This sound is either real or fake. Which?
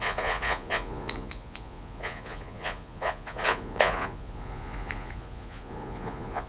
fake